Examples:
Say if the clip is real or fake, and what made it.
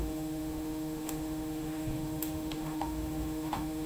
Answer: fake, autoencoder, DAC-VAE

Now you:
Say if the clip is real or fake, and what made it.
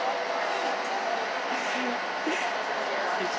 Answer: real